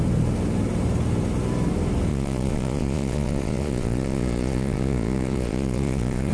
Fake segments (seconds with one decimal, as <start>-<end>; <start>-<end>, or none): 2.1-6.3